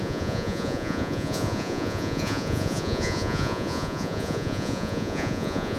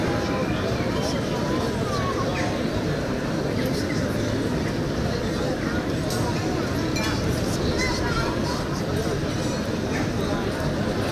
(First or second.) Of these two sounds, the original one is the second